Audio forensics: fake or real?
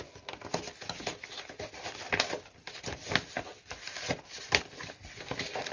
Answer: real